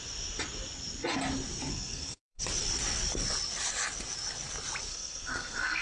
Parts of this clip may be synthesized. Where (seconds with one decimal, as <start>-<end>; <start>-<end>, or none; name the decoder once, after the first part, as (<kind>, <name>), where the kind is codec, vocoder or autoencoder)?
1.7-2.4 (codec, SNAC); 4.9-5.8